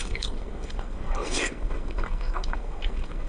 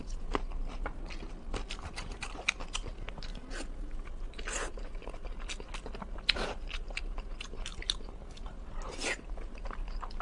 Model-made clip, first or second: first